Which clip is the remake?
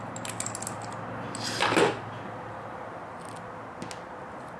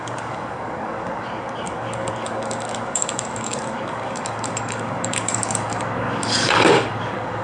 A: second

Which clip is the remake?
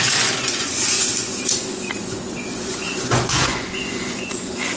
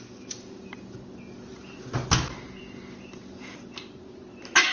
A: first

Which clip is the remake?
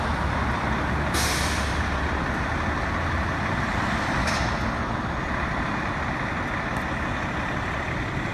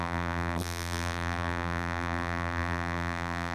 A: second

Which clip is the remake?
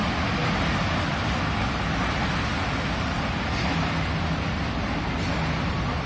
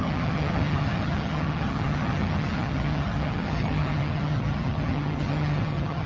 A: second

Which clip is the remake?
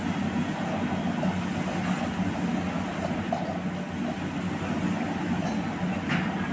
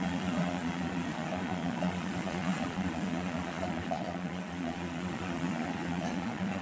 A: second